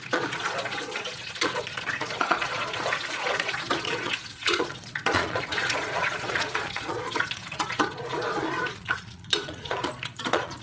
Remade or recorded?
remade